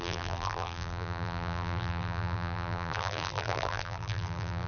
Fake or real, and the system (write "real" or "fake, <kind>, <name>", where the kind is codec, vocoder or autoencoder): fake, vocoder, BigVGAN v2